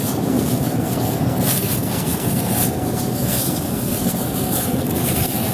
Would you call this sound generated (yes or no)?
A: yes